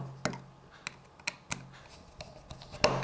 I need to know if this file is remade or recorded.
recorded